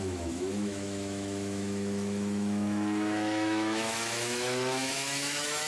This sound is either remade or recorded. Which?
remade